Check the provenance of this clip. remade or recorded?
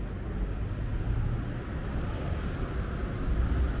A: recorded